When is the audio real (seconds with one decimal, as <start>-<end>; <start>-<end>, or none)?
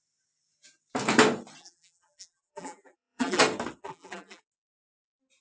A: 0.0-1.6; 3.4-3.8; 4.4-5.4